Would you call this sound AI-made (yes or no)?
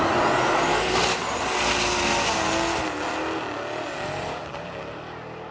no